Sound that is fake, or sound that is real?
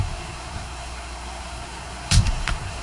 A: fake